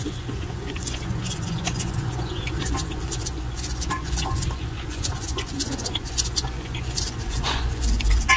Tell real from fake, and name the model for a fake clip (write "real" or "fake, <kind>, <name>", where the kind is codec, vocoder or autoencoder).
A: fake, vocoder, Vocos